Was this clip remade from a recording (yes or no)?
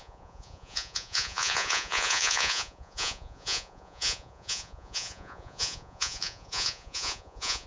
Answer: yes